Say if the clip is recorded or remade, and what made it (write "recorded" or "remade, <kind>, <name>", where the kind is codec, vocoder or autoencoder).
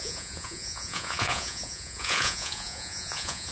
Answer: remade, vocoder, Vocos